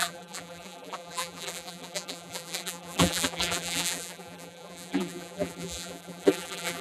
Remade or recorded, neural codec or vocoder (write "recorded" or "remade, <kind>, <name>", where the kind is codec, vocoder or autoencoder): remade, vocoder, BigVGAN v2